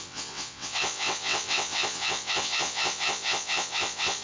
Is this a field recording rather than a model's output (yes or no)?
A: no